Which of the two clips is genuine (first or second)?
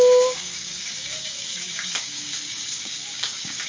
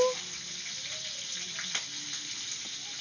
second